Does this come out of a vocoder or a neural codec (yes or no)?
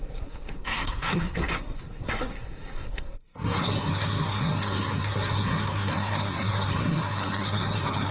yes